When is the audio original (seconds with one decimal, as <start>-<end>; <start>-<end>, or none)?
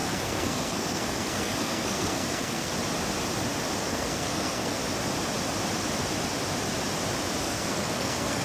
2.7-3.8; 4.8-7.4